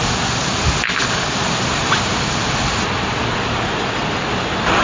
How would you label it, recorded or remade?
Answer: recorded